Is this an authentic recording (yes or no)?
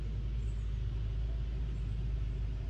yes